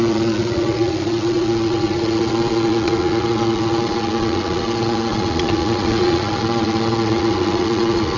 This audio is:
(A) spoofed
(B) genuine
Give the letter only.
A